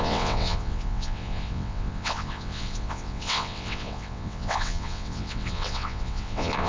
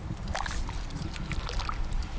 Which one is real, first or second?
second